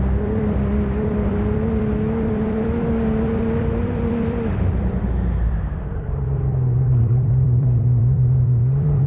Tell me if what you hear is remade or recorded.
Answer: remade